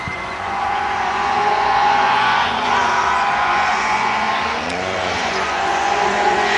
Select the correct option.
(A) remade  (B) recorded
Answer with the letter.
A